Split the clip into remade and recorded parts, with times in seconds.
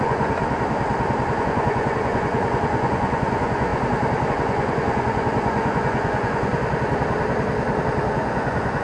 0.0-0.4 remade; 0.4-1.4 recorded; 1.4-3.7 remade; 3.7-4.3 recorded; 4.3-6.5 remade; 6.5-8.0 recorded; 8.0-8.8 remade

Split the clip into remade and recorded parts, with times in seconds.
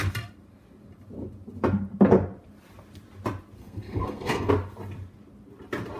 0.0-3.6 recorded; 3.6-4.5 remade; 4.5-6.0 recorded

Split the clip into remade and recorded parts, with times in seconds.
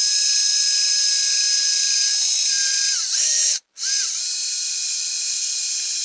0.0-6.0 recorded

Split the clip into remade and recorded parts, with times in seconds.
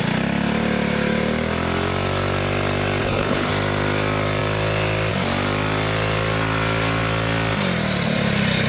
0.0-3.0 recorded; 3.0-3.5 remade; 3.5-8.7 recorded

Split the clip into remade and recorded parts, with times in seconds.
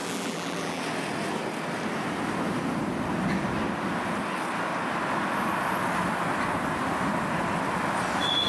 0.0-0.8 remade; 0.8-8.5 recorded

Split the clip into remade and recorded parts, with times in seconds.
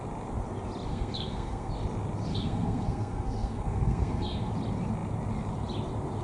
0.0-0.9 recorded; 0.9-1.7 remade; 1.7-2.3 recorded; 2.3-4.5 remade; 4.5-6.2 recorded